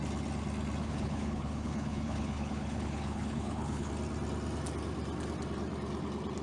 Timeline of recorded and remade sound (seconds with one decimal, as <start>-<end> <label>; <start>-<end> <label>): 0.0-0.8 recorded; 0.8-3.9 remade; 3.9-6.4 recorded